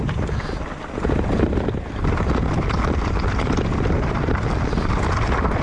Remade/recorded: recorded